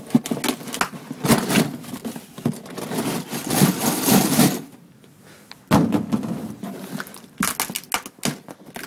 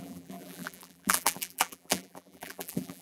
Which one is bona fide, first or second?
first